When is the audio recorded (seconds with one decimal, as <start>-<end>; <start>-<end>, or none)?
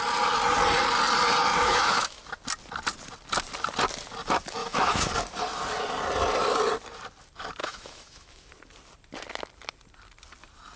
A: 0.0-1.5; 2.2-4.6; 5.1-7.6; 8.5-10.8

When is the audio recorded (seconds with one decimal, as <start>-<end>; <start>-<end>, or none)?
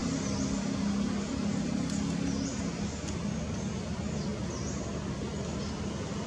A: 0.0-6.3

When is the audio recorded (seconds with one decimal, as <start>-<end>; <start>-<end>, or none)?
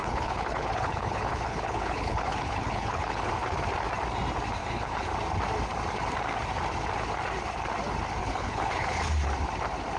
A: 3.3-4.6; 5.1-8.2; 9.1-10.0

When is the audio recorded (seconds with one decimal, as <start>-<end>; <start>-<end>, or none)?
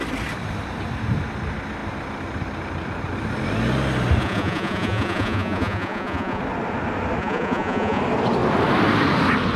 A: 0.0-4.2; 6.4-7.2; 8.0-9.6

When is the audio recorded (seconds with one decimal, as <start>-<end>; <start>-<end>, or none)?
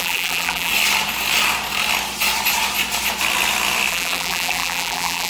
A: 0.7-3.9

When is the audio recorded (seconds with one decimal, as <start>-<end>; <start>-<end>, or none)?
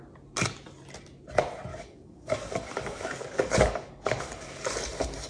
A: 0.0-1.7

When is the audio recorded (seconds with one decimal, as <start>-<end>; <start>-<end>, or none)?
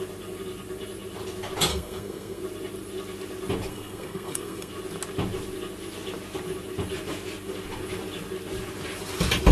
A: 0.0-1.7; 2.4-3.7; 4.7-9.5